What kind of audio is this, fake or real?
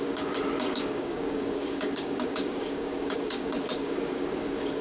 fake